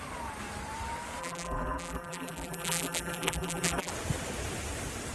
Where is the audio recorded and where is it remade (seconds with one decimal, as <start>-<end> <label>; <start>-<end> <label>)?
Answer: 0.0-1.2 recorded; 1.2-3.9 remade; 3.9-5.1 recorded